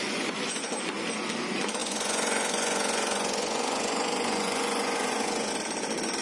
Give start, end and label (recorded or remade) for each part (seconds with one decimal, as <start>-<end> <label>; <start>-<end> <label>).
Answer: 0.0-0.7 remade; 0.7-1.8 recorded; 1.8-5.5 remade; 5.5-6.2 recorded